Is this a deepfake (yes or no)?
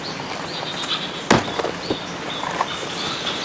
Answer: no